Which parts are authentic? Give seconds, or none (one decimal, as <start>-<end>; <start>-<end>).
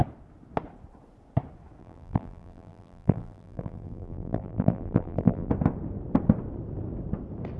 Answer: 0.0-1.8; 5.5-7.6